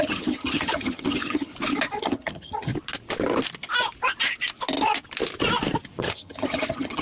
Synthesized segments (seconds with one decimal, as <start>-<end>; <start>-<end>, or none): 0.0-1.5; 2.0-2.7; 6.0-7.0